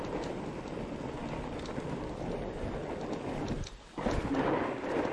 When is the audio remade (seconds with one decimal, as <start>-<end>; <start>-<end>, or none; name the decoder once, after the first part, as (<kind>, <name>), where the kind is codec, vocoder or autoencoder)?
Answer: none

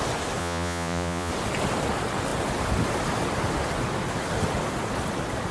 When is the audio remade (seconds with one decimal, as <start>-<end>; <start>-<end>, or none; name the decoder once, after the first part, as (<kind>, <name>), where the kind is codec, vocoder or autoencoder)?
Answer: 0.4-1.3 (vocoder, Vocos)

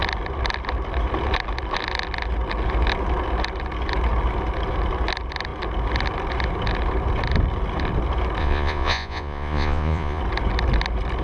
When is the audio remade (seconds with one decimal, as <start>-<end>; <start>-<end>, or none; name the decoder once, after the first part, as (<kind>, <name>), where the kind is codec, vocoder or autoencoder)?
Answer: 8.4-10.2 (vocoder, Vocos)

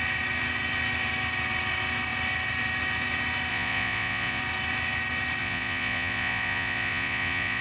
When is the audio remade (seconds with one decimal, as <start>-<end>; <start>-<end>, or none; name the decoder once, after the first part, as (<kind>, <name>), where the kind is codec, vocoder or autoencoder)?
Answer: 3.5-4.4 (vocoder, Vocos); 5.4-7.6

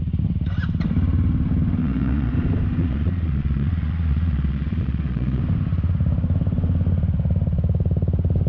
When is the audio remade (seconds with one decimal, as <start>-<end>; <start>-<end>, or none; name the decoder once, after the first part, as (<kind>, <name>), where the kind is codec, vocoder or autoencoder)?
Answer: 1.8-2.3 (vocoder, Vocos); 2.8-5.4